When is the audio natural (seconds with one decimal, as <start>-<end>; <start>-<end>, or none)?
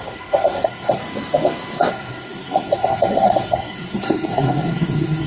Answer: 1.0-1.9